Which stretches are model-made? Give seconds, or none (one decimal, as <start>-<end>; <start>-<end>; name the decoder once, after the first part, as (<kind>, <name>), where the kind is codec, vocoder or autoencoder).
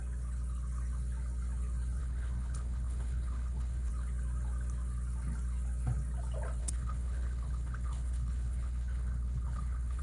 2.0-3.9 (codec, HILCodec); 6.6-10.0